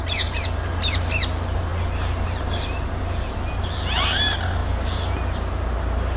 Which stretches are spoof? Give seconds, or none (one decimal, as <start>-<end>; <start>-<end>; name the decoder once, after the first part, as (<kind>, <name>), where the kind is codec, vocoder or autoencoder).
none